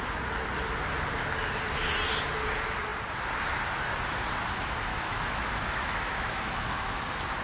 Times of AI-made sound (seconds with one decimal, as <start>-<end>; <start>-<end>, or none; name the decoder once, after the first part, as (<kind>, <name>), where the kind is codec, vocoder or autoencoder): 4.9-7.0 (autoencoder, DAC-VAE)